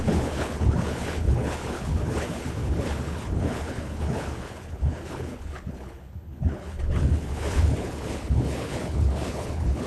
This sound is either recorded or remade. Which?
remade